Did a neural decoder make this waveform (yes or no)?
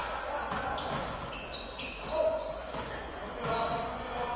yes